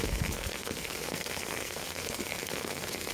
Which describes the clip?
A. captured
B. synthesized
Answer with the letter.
B